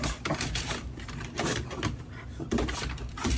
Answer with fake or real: fake